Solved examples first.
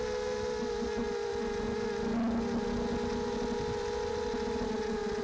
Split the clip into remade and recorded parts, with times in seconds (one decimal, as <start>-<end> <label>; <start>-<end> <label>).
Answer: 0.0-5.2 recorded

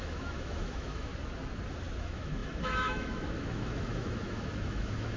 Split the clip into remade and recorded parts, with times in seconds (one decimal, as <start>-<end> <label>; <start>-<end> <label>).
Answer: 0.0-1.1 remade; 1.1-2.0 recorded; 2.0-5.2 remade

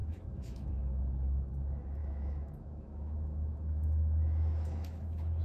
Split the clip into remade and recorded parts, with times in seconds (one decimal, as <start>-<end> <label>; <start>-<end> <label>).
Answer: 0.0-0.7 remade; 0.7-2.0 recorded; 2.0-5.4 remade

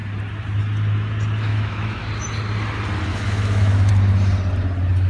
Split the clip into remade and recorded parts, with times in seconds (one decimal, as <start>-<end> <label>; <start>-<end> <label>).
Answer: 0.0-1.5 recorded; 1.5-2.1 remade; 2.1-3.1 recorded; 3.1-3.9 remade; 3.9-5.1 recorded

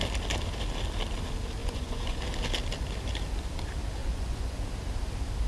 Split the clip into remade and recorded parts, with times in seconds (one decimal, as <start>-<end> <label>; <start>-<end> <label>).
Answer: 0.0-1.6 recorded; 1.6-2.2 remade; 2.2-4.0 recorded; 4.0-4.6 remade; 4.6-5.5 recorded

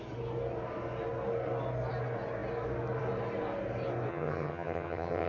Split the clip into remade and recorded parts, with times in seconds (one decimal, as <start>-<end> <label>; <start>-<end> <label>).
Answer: 0.0-4.1 recorded; 4.1-5.3 remade